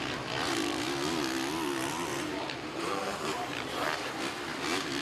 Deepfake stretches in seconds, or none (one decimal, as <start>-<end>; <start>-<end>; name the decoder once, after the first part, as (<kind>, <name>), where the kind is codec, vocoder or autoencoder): 2.1-4.2 (vocoder, BigVGAN v2)